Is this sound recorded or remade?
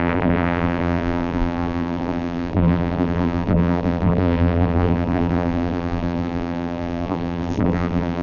remade